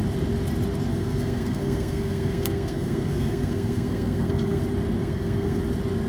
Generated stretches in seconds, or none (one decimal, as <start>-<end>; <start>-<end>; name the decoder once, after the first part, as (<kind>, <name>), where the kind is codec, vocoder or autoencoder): 0.9-4.6 (codec, SNAC); 5.0-5.6